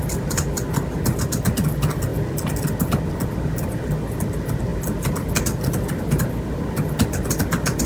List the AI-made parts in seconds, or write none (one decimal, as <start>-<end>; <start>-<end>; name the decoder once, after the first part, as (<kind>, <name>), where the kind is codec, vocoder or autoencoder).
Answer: none